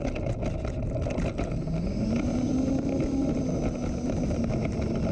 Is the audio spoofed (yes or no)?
no